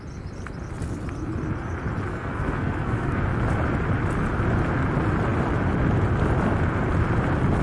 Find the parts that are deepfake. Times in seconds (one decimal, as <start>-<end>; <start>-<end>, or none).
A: 2.1-3.2